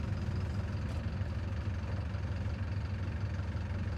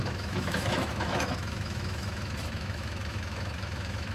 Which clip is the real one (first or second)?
first